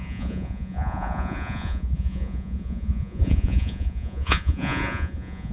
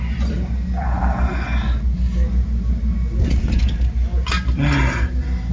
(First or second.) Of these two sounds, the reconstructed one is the first